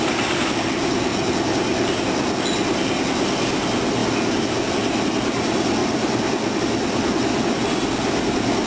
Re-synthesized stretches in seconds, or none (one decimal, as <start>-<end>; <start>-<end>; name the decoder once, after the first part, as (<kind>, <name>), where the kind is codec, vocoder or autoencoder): none